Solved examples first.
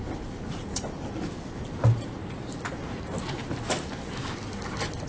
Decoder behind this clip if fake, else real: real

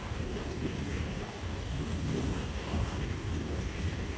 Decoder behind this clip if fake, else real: fake, codec, DAC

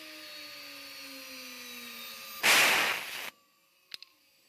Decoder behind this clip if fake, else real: real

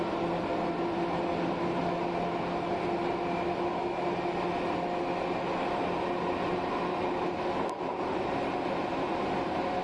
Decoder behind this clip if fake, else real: real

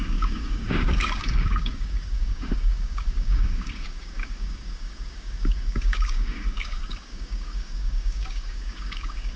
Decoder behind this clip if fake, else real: fake, codec, DAC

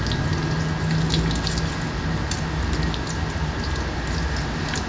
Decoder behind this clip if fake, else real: real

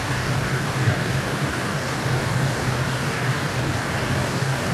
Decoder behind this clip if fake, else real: fake, codec, DAC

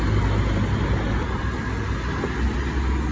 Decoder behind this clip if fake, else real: real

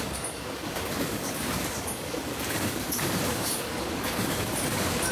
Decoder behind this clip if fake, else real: fake, codec, DAC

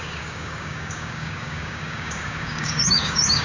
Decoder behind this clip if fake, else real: fake, codec, DAC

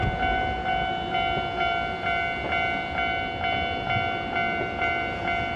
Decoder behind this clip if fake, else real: real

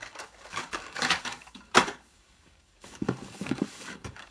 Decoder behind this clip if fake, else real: fake, codec, DAC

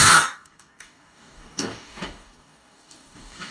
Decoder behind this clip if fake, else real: fake, codec, DAC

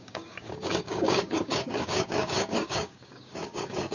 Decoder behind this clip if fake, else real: fake, codec, DAC